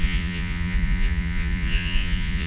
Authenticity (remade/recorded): remade